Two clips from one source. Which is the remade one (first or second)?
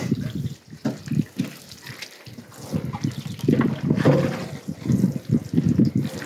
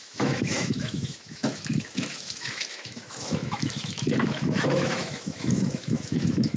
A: second